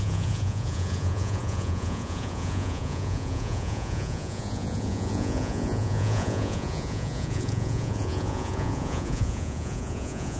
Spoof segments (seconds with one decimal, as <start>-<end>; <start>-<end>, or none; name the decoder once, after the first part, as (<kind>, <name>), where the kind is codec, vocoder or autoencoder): 0.0-10.4 (vocoder, Vocos)